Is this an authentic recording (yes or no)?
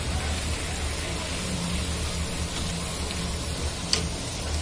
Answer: yes